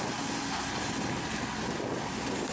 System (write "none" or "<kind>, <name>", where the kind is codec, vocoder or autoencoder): none